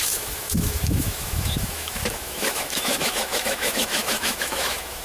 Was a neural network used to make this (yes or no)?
yes